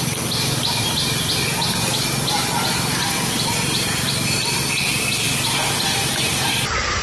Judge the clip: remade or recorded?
recorded